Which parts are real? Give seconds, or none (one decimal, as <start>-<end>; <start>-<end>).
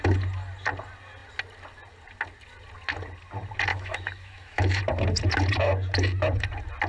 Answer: 0.0-3.7; 4.8-6.9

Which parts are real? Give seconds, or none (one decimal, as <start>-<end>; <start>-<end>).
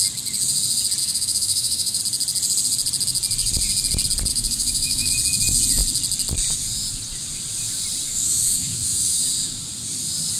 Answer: 0.0-1.0; 2.0-4.3; 5.1-8.1; 9.2-10.4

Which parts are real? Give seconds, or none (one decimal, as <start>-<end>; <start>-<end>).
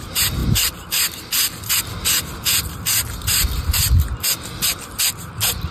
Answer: 0.0-5.7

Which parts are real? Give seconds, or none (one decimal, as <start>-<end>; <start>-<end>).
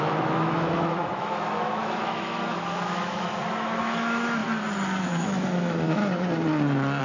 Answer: 4.4-5.0; 6.0-7.0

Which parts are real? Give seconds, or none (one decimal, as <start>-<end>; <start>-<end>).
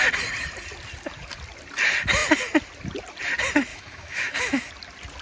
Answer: 0.0-3.7; 4.7-5.2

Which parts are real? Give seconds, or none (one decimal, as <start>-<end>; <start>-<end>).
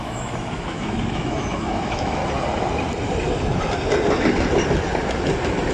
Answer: 2.2-5.7